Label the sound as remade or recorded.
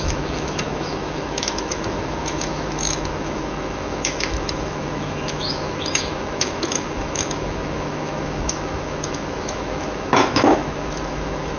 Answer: remade